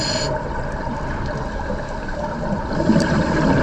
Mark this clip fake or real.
real